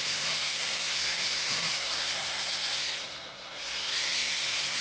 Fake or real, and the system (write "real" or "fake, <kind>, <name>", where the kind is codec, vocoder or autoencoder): fake, codec, SNAC